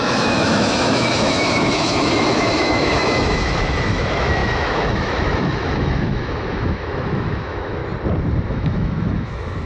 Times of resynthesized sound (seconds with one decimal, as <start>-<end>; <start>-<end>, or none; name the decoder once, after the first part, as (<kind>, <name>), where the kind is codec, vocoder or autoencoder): 0.0-7.8 (autoencoder, DAC-VAE); 8.5-9.7